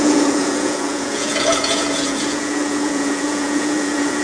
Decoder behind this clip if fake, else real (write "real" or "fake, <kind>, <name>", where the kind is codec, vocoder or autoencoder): fake, vocoder, Vocos